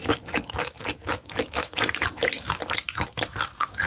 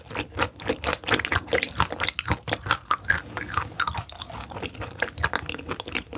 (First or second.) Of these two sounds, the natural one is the second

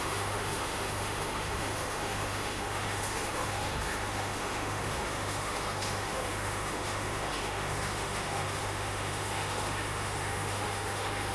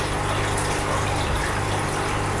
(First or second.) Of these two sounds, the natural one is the second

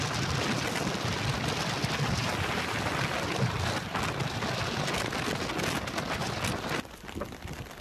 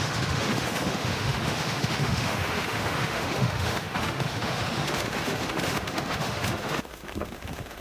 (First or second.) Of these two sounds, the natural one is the first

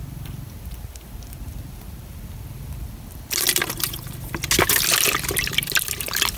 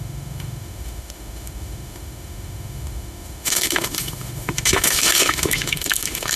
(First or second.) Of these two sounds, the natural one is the first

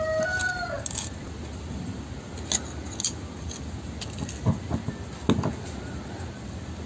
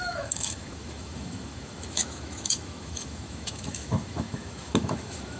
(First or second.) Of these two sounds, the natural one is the first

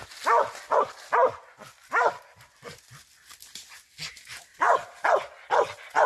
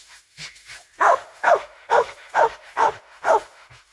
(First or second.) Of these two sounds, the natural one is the first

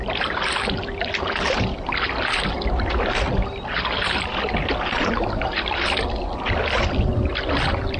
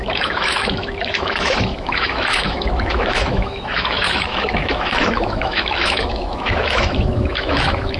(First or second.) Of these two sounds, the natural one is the first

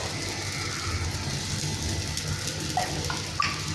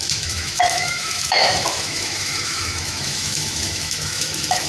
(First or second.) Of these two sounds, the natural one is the first